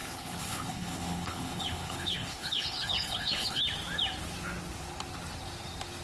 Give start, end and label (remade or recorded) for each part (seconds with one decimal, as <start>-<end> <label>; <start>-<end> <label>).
0.0-3.6 remade; 3.6-6.0 recorded